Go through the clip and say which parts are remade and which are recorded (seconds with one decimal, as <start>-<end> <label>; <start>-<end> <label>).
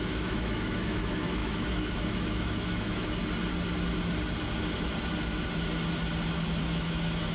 0.0-3.2 remade; 3.2-6.6 recorded; 6.6-7.3 remade